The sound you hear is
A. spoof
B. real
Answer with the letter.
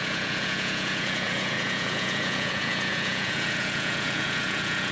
A